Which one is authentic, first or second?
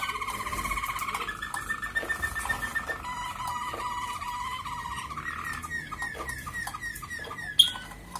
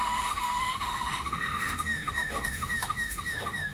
first